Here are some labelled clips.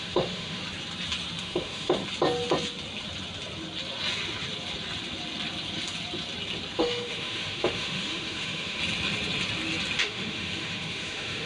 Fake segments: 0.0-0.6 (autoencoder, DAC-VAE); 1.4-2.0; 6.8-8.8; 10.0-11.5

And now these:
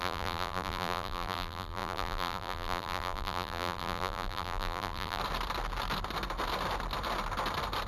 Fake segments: 0.0-5.2 (vocoder, BigVGAN v2)

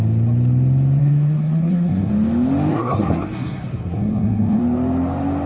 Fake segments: 1.0-2.1 (codec, SNAC); 2.7-4.6

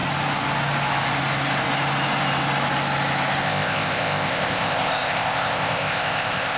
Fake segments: 3.4-6.6 (codec, ZipCodec)

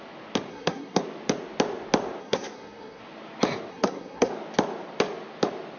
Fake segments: 0.5-1.0 (codec, SNAC); 2.2-3.0; 3.7-4.3

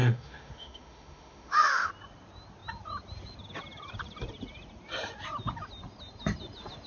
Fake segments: 0.0-1.9 (autoencoder, DAC-VAE)

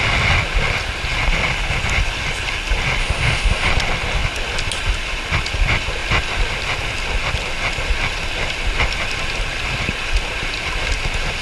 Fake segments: 3.0-3.7 (autoencoder, DAC-VAE)

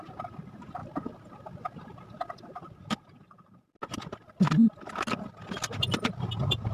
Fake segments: none